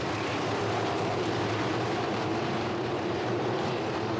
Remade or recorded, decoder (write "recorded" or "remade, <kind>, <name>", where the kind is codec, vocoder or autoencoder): remade, vocoder, BigVGAN v2